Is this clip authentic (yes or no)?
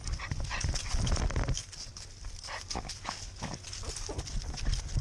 yes